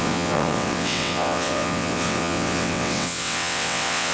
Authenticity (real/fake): fake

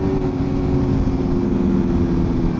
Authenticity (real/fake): real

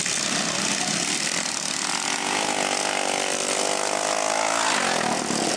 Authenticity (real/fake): real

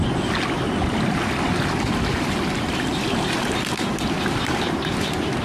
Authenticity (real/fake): real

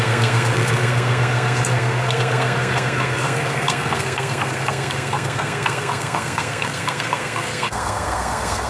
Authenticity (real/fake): fake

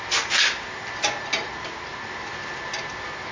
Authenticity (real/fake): real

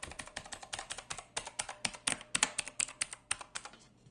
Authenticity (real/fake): real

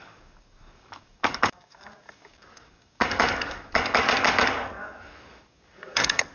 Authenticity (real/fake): fake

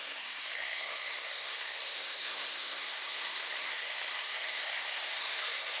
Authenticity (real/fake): fake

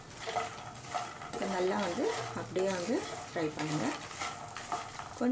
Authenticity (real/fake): real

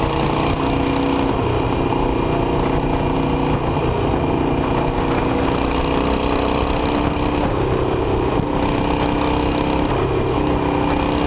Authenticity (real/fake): real